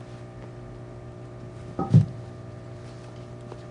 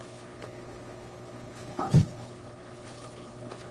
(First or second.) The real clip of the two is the first